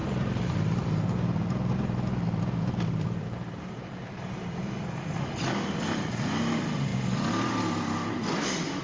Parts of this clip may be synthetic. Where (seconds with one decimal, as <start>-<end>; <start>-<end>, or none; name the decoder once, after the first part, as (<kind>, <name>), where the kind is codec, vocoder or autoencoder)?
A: 0.0-4.8 (vocoder, BigVGAN v2)